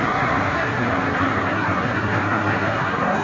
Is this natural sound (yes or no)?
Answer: no